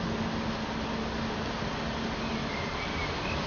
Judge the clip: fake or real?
real